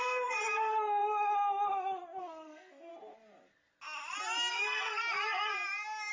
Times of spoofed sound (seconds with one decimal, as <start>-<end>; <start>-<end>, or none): 0.0-1.0; 2.2-2.9; 4.5-5.0